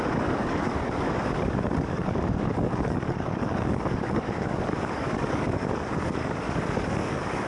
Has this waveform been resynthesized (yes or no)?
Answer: yes